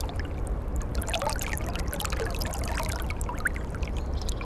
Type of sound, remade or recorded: recorded